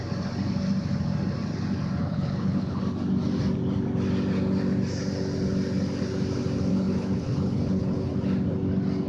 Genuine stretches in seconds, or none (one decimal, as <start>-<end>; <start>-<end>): 0.0-2.0; 2.8-6.7; 8.1-9.1